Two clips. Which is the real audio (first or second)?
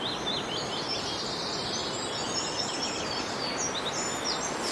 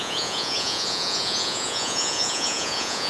first